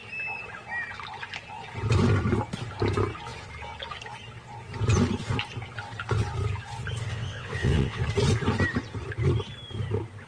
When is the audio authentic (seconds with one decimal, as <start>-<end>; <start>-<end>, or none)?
0.0-7.1; 8.0-10.3